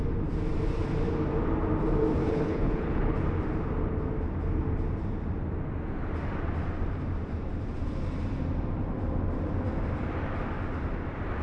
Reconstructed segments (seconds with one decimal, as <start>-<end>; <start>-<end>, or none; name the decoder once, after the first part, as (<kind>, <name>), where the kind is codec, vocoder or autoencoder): 2.2-3.2 (codec, HILCodec)